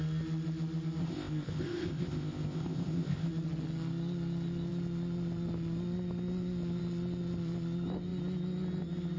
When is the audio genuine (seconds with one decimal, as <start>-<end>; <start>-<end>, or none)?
0.0-1.0; 3.3-9.2